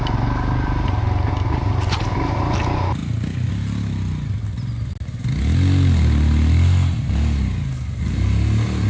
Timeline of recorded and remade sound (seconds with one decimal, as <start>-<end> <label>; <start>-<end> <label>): 0.0-8.9 recorded